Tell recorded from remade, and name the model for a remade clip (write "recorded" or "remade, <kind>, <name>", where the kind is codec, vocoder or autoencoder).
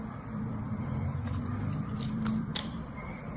remade, vocoder, BigVGAN v2